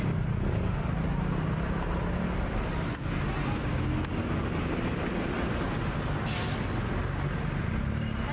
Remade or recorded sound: recorded